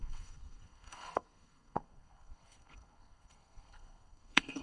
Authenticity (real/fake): fake